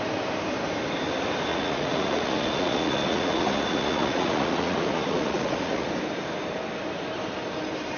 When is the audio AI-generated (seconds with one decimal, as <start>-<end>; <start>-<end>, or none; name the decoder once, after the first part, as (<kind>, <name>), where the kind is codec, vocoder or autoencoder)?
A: 1.5-5.9 (vocoder, Vocos)